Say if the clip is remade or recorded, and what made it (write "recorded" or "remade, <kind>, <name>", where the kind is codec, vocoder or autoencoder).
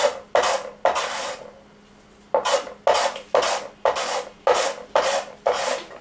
recorded